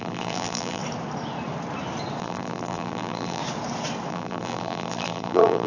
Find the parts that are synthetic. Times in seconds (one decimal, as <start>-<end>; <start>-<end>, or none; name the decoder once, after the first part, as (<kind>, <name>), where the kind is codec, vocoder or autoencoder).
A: 0.0-0.8 (vocoder, BigVGAN v2); 2.2-3.4; 4.1-5.7